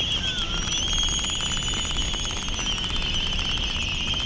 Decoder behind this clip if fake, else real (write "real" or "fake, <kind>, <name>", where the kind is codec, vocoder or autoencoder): real